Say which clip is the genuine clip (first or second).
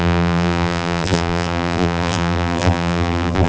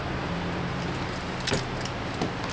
second